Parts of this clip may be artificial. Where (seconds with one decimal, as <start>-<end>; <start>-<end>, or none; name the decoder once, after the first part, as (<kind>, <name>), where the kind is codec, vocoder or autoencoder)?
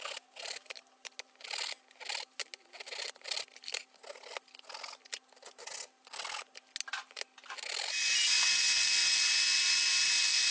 none